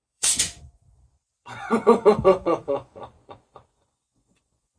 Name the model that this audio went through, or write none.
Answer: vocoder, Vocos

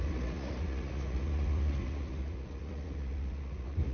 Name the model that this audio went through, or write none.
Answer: vocoder, Vocos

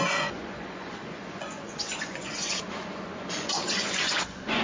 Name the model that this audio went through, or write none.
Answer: vocoder, Vocos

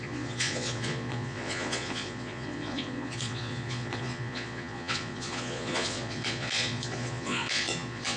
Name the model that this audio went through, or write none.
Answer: vocoder, Vocos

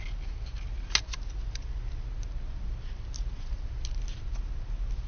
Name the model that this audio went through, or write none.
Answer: none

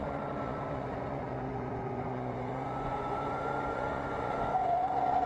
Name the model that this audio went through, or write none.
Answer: vocoder, Vocos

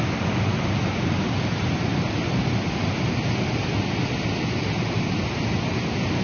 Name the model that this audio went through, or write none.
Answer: none